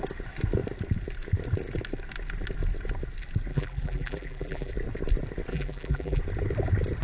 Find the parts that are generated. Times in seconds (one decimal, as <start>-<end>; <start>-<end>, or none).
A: 3.5-4.7; 5.5-6.2